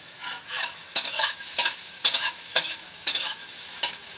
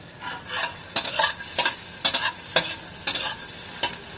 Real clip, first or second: second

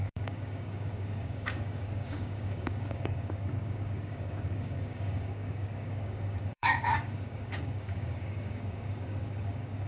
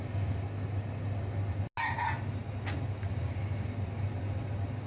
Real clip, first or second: second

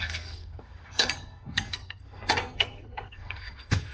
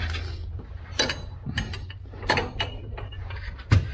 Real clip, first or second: second